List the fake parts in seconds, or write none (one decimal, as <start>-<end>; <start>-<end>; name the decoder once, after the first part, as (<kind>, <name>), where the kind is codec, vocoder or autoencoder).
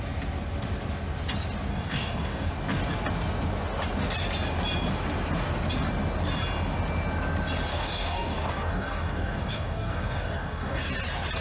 1.7-2.5 (codec, DAC); 7.7-10.8